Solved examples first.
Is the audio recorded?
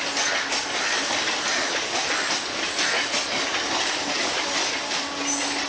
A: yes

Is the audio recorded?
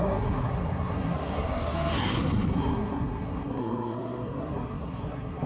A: no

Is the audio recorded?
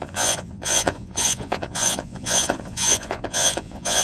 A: no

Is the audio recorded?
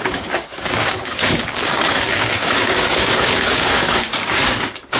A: no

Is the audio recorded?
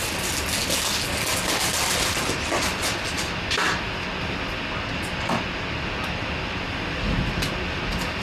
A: yes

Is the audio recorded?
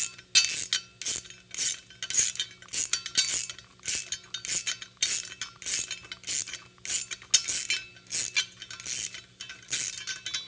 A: yes